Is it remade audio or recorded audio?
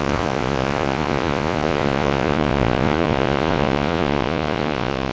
remade